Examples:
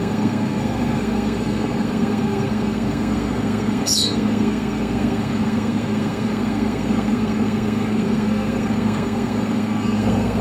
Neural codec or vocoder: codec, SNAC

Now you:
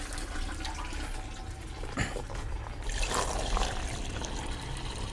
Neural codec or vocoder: none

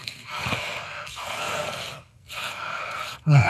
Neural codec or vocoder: codec, SNAC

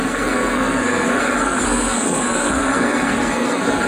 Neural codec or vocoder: codec, SNAC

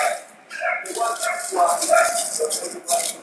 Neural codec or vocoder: none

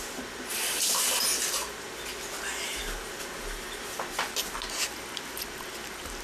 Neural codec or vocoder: none